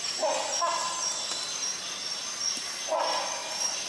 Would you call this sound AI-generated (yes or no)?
no